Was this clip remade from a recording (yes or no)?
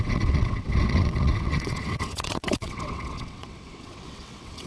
yes